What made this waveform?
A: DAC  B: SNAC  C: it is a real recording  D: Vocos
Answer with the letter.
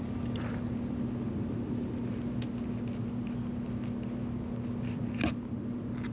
C